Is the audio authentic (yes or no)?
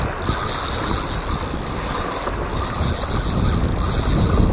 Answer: yes